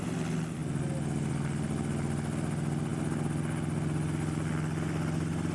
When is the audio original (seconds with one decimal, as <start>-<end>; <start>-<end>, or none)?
0.0-5.5